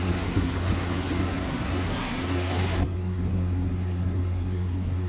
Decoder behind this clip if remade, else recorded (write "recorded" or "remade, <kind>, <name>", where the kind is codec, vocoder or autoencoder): remade, codec, SNAC